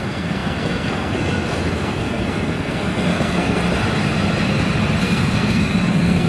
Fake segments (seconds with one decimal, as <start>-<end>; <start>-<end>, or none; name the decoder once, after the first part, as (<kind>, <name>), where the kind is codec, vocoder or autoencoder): 0.0-3.6 (codec, SNAC); 5.0-6.3

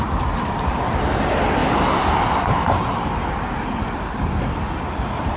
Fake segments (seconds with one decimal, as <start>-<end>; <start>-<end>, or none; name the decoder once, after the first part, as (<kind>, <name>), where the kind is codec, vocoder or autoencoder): none

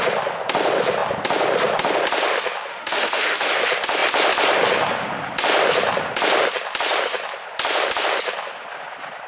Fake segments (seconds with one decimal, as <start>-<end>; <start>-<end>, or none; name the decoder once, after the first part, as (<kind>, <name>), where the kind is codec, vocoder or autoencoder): 2.7-3.5 (autoencoder, DAC-VAE)

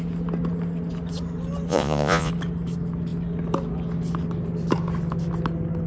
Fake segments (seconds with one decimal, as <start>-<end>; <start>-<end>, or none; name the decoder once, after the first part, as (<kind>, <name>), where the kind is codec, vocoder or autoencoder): 1.7-2.3 (vocoder, Vocos)

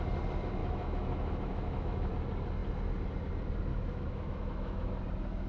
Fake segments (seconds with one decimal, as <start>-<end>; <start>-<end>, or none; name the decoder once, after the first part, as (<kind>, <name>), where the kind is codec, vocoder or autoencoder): 0.6-2.1 (autoencoder, DAC-VAE); 3.7-5.0